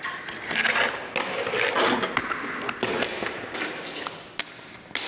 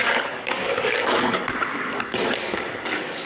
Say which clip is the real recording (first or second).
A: first